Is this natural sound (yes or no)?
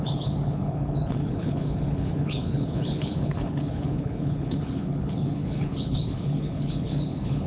no